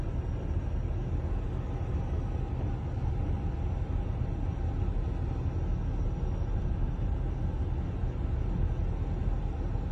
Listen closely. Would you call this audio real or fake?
real